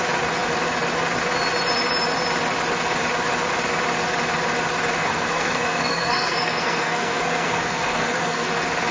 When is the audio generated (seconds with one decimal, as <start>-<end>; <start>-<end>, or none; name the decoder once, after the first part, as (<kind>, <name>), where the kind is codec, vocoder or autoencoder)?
5.0-8.5 (codec, SNAC)